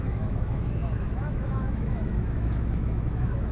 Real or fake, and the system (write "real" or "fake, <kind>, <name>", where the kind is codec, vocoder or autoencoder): fake, autoencoder, DAC-VAE